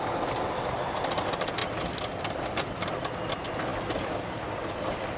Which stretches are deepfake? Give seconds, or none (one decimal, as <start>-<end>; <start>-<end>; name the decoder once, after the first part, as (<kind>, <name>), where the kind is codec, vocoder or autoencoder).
none